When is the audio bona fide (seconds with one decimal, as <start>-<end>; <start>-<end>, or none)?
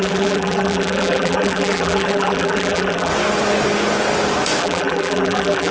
3.1-4.6